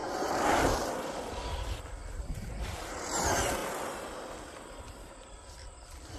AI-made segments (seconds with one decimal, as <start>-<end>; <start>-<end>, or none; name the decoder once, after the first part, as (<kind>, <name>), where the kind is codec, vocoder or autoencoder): 0.0-2.0 (vocoder, BigVGAN v2); 3.2-3.6; 4.9-6.2